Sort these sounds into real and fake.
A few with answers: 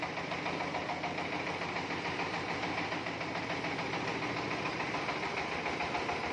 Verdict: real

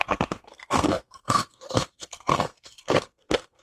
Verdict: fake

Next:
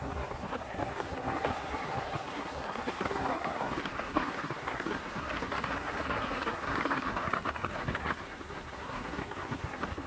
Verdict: fake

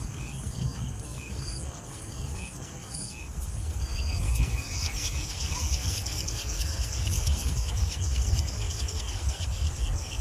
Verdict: fake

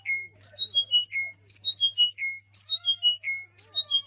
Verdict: real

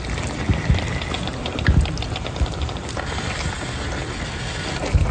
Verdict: real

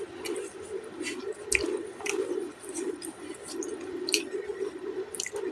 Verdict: real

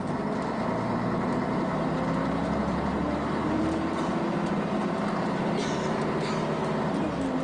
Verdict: real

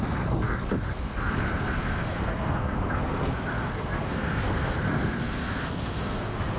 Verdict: fake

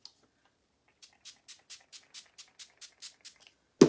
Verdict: real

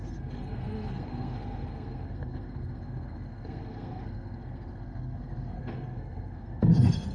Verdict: fake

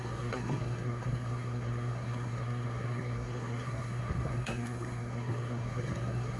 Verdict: fake